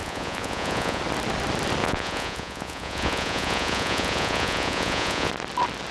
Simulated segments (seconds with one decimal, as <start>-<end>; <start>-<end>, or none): 0.0-1.0; 1.8-5.3